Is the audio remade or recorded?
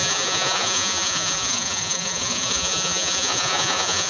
remade